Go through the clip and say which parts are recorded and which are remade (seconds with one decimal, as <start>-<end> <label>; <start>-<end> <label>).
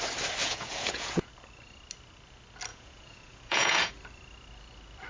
0.0-0.4 recorded; 0.4-1.3 remade; 1.3-2.7 recorded; 2.7-3.9 remade; 3.9-5.1 recorded